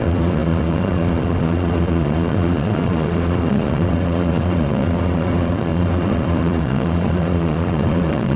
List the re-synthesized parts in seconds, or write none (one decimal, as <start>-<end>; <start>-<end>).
0.0-8.4